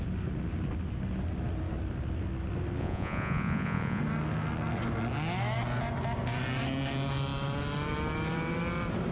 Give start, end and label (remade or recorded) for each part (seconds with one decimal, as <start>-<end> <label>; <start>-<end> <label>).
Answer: 0.0-2.8 recorded; 2.8-4.0 remade; 4.0-9.1 recorded